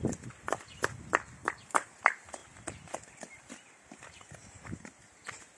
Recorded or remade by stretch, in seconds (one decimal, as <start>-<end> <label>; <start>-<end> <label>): 0.0-1.4 recorded; 1.4-2.0 remade; 2.0-5.6 recorded